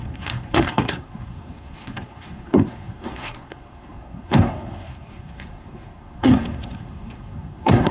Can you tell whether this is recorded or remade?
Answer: remade